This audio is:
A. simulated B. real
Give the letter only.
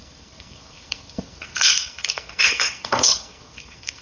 A